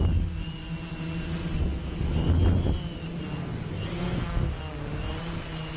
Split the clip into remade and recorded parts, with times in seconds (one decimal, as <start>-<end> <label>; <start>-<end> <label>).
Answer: 0.0-5.8 recorded

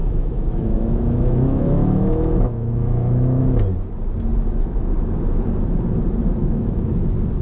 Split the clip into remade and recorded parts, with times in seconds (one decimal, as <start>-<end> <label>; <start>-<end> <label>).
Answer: 0.0-3.4 remade; 3.4-6.4 recorded; 6.4-6.9 remade; 6.9-7.4 recorded

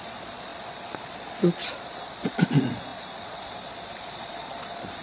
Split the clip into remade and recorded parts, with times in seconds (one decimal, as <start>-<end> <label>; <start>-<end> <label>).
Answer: 0.0-5.0 remade

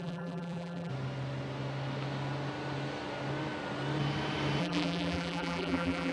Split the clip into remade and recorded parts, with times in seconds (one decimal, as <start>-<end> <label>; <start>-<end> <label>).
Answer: 0.0-0.9 remade; 0.9-4.6 recorded; 4.6-6.1 remade

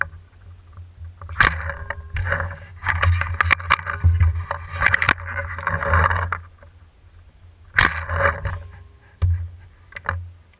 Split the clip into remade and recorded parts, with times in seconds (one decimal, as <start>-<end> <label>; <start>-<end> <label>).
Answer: 0.0-2.2 recorded; 2.2-3.3 remade; 3.3-10.6 recorded

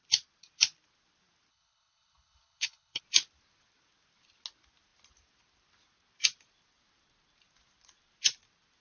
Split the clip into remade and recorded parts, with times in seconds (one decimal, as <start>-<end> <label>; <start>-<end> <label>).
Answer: 0.0-1.5 recorded; 1.5-3.0 remade; 3.0-8.8 recorded